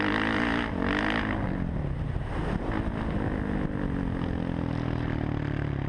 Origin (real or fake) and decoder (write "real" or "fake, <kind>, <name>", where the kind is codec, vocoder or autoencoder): real